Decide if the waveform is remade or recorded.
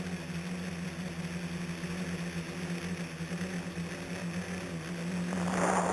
recorded